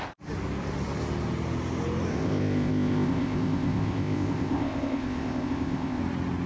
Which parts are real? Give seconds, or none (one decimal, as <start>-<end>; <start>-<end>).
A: 0.0-2.1; 6.0-6.5